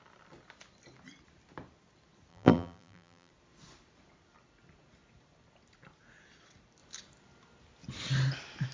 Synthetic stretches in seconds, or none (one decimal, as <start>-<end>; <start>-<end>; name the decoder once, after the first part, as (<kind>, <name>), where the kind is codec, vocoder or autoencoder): 2.3-3.3 (vocoder, BigVGAN v2)